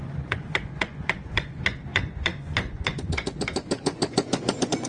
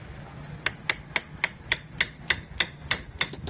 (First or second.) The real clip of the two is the second